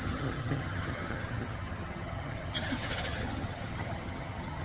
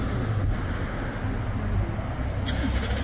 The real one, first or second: second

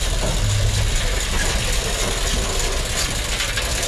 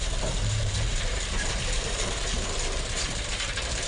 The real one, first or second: first